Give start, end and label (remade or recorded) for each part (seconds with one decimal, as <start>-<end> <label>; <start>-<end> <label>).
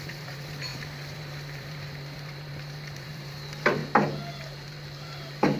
0.0-3.8 remade; 3.8-4.3 recorded; 4.3-5.6 remade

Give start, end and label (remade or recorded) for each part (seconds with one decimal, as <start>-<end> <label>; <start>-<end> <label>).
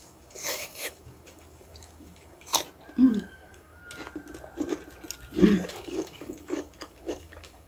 0.0-2.5 remade; 2.5-3.1 recorded; 3.1-3.8 remade; 3.8-5.7 recorded; 5.7-7.7 remade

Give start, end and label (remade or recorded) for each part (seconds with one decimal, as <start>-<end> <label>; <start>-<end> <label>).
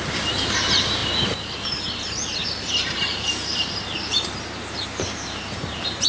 0.0-2.4 recorded; 2.4-6.1 remade